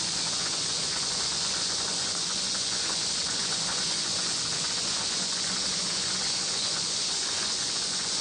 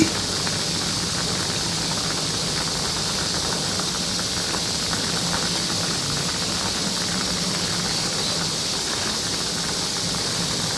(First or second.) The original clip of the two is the second